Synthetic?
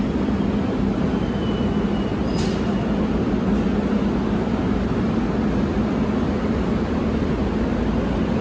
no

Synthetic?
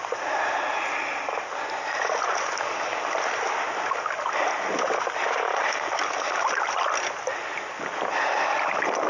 no